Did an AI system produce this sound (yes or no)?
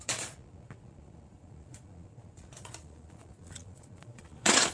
yes